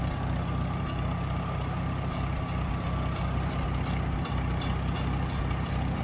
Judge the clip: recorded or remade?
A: recorded